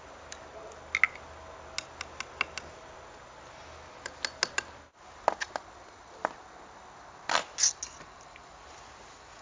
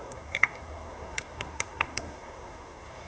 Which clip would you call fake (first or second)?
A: second